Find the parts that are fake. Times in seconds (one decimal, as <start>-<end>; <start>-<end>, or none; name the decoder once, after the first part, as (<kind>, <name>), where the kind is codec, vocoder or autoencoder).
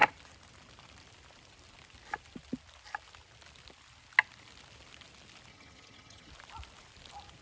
5.5-6.3 (vocoder, HiFi-GAN)